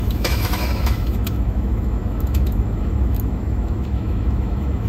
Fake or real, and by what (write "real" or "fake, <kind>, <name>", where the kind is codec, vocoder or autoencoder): fake, autoencoder, DAC-VAE